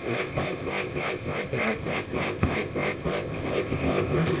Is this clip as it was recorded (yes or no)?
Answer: no